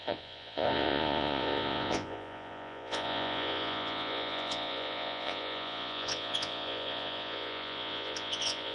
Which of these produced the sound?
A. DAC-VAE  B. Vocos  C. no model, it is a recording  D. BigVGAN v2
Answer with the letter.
B